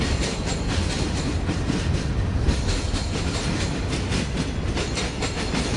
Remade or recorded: recorded